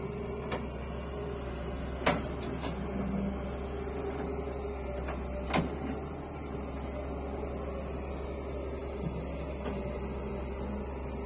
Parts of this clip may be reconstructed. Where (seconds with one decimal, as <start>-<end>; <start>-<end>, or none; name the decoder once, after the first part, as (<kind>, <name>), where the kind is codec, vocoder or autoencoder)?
none